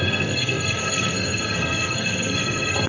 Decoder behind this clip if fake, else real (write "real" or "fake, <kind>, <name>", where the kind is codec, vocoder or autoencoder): fake, codec, SNAC